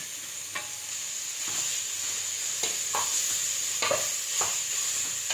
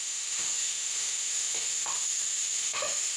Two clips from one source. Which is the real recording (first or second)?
first